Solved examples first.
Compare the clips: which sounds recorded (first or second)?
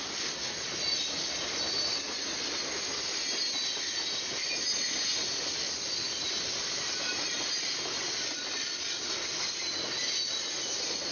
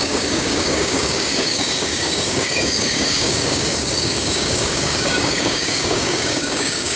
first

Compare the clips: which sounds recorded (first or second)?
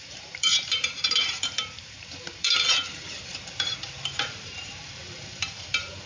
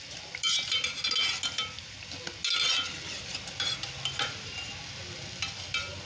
second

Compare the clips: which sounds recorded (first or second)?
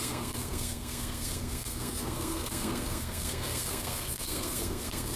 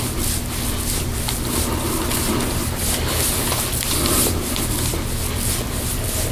second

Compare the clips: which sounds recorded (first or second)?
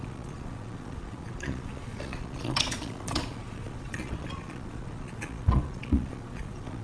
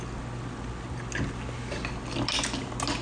second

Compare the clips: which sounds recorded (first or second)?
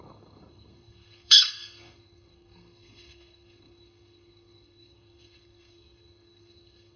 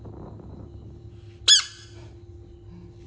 second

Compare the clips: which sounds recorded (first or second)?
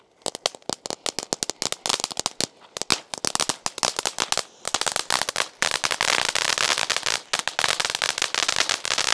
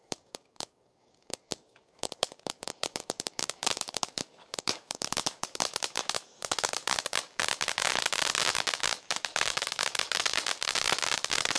first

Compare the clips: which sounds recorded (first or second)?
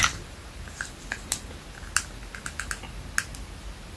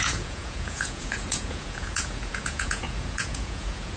first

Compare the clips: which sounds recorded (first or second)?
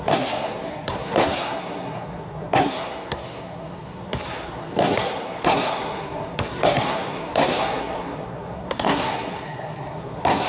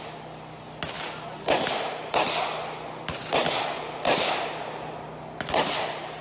second